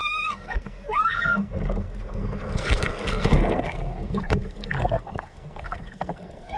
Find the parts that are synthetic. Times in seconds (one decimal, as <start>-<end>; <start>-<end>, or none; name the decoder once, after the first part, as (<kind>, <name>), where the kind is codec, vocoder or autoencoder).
0.0-6.6 (codec, SNAC)